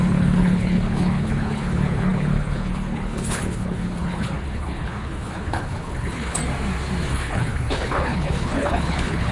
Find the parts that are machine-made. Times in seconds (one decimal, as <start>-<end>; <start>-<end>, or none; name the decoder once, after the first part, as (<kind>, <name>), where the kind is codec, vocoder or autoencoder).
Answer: 0.0-6.4 (codec, HILCodec); 7.1-9.3